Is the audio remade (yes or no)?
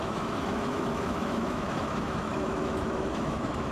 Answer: yes